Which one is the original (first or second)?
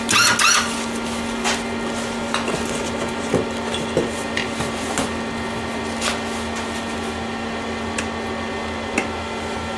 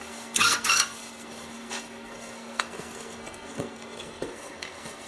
first